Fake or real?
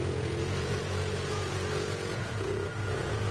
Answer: fake